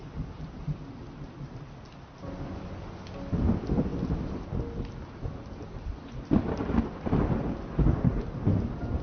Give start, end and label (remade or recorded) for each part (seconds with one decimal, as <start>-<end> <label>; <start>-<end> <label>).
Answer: 0.0-9.0 recorded